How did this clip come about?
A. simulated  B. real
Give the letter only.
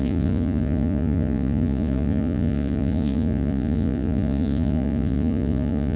A